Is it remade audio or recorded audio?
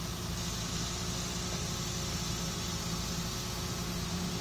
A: recorded